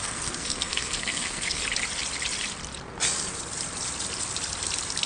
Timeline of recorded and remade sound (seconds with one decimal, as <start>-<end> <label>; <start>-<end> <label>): 0.0-1.6 remade; 1.6-5.1 recorded